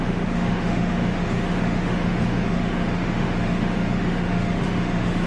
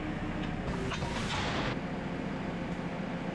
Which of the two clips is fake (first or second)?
first